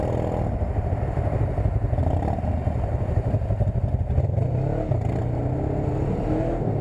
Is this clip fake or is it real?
real